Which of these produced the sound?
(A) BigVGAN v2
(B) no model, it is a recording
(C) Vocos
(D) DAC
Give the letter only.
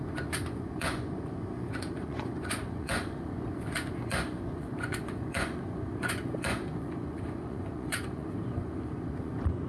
C